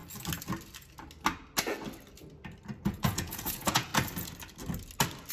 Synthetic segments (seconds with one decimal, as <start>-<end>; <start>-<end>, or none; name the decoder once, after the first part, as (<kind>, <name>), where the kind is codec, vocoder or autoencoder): 2.8-3.9 (vocoder, Vocos)